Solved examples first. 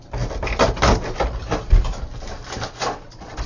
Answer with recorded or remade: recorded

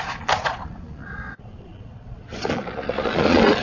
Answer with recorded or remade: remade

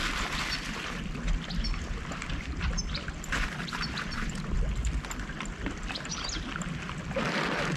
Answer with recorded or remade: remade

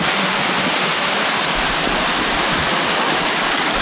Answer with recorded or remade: recorded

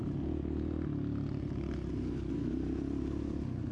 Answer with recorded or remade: recorded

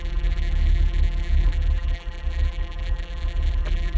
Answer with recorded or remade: remade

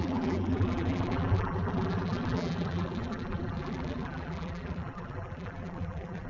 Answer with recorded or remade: remade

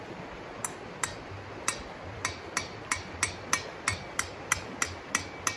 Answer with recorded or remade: recorded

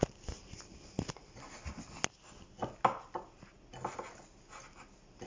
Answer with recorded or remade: recorded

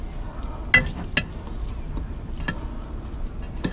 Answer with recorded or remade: recorded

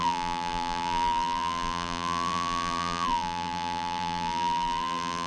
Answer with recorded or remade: remade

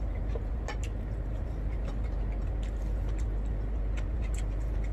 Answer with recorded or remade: recorded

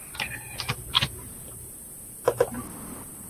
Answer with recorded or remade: recorded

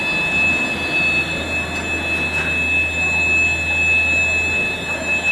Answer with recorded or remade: recorded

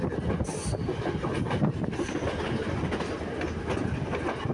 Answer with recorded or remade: recorded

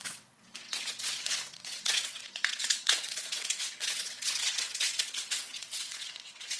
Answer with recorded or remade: remade